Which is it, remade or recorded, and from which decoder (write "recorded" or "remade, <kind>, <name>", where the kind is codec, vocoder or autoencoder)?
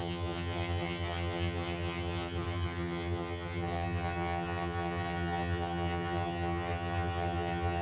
remade, vocoder, HiFi-GAN